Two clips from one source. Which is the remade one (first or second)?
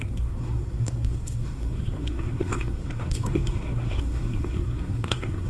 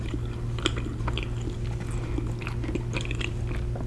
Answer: first